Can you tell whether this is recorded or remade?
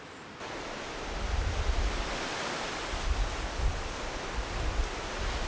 recorded